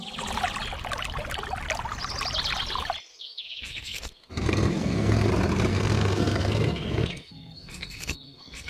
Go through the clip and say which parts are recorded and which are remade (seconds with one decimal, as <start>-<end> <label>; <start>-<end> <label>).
0.0-3.1 recorded; 3.1-5.3 remade; 5.3-5.7 recorded; 5.7-8.7 remade

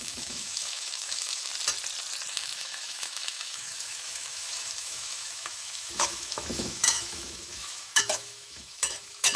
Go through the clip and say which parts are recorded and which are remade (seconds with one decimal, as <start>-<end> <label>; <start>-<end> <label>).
0.0-1.5 remade; 1.5-2.3 recorded; 2.3-9.4 remade

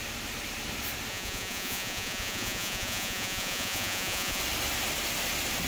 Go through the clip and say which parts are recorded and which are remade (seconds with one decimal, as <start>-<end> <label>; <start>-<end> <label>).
0.0-1.1 recorded; 1.1-4.4 remade; 4.4-5.7 recorded

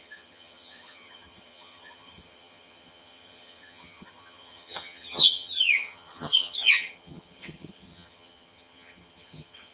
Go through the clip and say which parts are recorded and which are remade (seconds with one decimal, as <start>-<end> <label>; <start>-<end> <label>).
0.0-9.7 remade

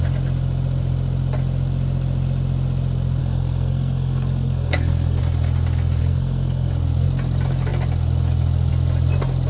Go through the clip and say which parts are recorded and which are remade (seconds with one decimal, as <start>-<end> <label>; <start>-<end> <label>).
0.0-3.2 recorded; 3.2-5.2 remade; 5.2-6.0 recorded; 6.0-6.7 remade; 6.7-9.5 recorded

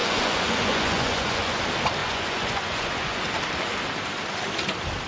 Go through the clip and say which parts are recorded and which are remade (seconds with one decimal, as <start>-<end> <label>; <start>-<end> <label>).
0.0-1.6 remade; 1.6-2.0 recorded; 2.0-3.2 remade; 3.2-5.1 recorded

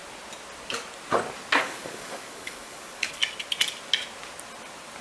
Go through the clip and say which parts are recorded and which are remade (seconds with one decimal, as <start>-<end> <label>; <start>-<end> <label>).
0.0-1.6 recorded; 1.6-3.2 remade; 3.2-5.0 recorded

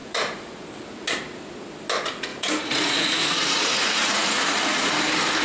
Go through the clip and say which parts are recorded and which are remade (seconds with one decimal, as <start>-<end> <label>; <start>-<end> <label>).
0.0-0.6 remade; 0.6-2.3 recorded; 2.3-4.9 remade; 4.9-5.4 recorded